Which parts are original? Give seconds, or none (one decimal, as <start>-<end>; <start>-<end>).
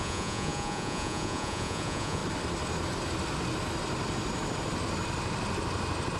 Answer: 2.2-6.2